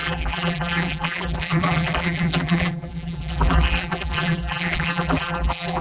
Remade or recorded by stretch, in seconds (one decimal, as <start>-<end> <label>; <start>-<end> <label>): 0.0-5.8 remade